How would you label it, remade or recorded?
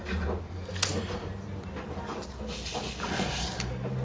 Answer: recorded